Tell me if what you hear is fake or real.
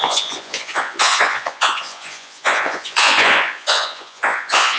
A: fake